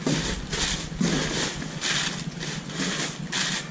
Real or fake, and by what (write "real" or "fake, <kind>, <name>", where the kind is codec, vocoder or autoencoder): real